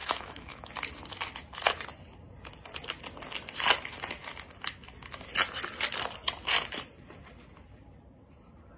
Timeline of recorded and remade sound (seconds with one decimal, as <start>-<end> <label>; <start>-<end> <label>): 0.0-0.7 remade; 0.7-8.8 recorded